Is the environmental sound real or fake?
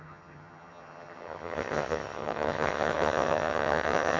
fake